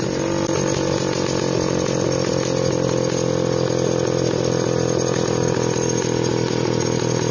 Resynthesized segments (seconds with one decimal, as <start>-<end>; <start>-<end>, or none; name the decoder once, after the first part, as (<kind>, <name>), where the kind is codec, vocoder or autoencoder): none